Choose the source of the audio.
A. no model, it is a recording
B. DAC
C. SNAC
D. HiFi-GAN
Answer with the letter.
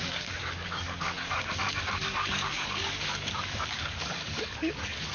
B